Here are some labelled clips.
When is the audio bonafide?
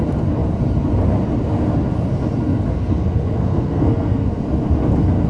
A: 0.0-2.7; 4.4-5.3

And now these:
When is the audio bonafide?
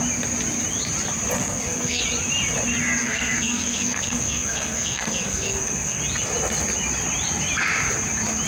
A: 0.0-1.4; 2.0-3.0; 6.0-8.5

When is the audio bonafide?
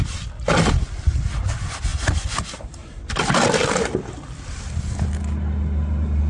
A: 0.0-1.9; 2.4-6.3